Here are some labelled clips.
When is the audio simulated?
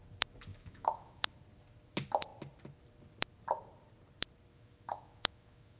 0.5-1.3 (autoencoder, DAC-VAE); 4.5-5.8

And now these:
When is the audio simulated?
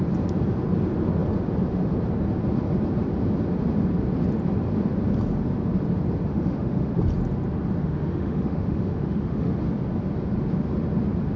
6.3-6.9 (autoencoder, DAC-VAE); 7.8-9.5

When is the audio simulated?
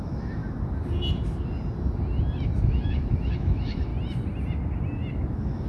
0.0-0.4 (autoencoder, DAC-VAE); 2.6-3.9; 5.1-5.7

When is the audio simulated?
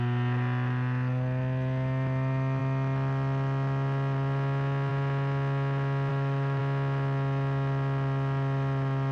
6.1-6.6 (autoencoder, DAC-VAE)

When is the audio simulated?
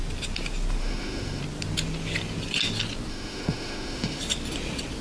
0.8-1.4 (autoencoder, DAC-VAE); 3.1-4.2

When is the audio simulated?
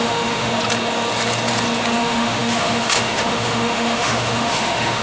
0.0-0.5 (autoencoder, DAC-VAE); 2.0-5.0